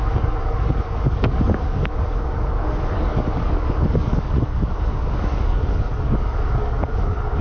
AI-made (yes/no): yes